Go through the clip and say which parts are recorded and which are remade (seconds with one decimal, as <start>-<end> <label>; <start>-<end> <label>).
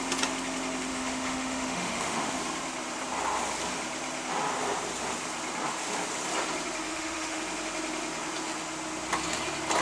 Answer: 0.0-0.9 recorded; 0.9-2.4 remade; 2.4-6.9 recorded; 6.9-7.4 remade; 7.4-9.8 recorded